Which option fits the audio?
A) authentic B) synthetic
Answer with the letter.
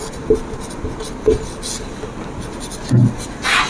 A